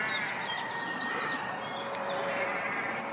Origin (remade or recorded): recorded